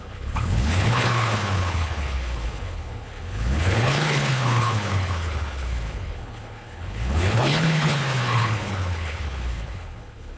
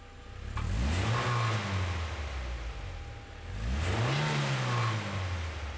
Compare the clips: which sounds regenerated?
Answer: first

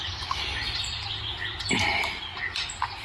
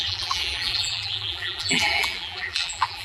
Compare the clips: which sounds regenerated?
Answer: second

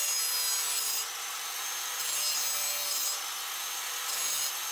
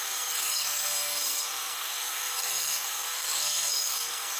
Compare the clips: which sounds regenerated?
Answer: second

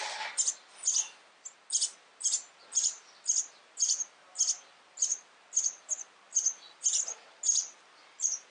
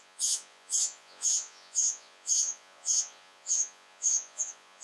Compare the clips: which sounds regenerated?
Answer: second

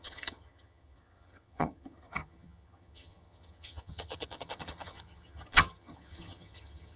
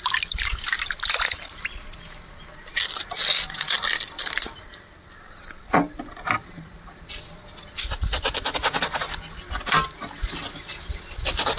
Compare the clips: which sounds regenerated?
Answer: first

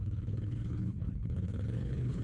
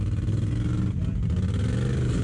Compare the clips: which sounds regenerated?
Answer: first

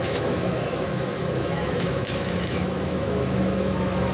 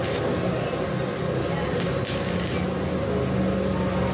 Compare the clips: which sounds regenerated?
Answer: first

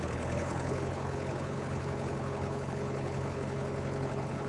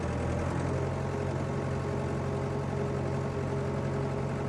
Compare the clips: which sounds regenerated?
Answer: first